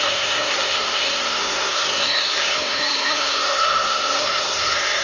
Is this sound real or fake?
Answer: fake